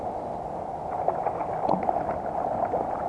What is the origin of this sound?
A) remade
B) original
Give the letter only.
A